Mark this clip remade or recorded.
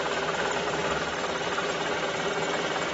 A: recorded